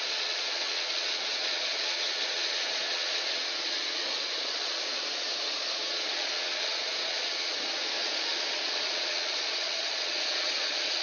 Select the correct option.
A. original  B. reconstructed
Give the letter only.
B